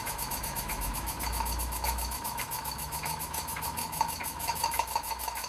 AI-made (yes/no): yes